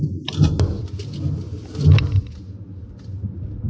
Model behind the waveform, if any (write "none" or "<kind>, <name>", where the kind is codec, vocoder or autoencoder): none